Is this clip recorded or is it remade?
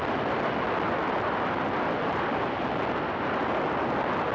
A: recorded